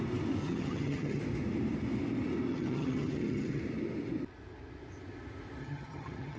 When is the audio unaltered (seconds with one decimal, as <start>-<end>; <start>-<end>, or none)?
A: 0.0-0.4; 1.2-2.5; 3.6-5.6